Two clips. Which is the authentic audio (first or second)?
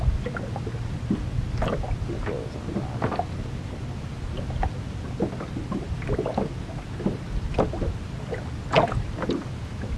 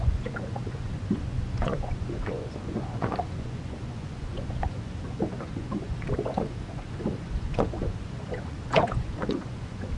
first